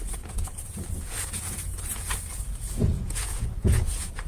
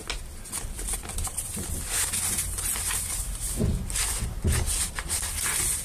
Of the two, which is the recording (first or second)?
second